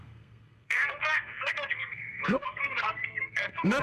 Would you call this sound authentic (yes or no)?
no